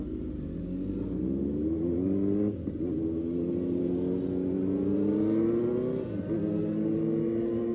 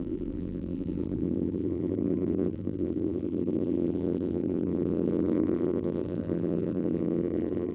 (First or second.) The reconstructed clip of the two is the second